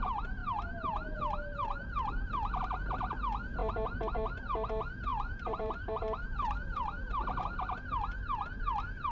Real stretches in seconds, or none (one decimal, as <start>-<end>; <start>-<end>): 0.0-0.4; 2.6-5.1; 7.2-9.1